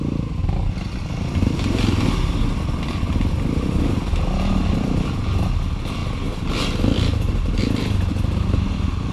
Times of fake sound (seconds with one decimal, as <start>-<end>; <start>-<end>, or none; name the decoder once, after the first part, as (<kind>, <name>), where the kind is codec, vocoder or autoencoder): none